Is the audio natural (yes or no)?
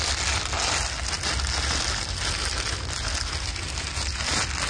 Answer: yes